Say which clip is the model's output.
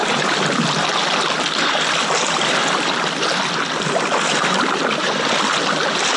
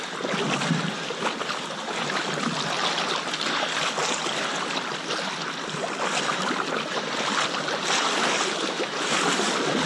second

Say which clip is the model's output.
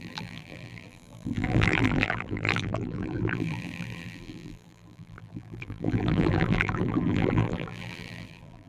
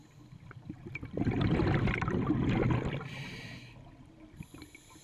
first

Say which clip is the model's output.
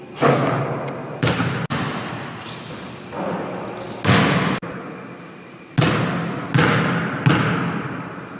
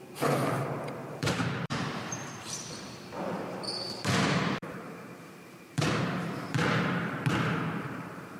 second